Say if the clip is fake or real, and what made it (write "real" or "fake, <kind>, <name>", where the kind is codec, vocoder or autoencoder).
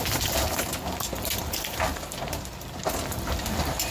real